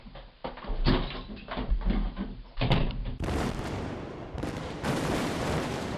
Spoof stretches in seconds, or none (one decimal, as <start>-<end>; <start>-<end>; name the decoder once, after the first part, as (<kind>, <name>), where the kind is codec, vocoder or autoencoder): 0.0-0.4 (vocoder, BigVGAN v2); 1.7-6.0